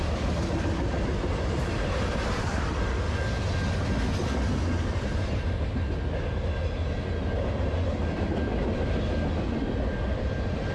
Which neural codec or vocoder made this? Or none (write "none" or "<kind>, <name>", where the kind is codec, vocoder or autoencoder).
none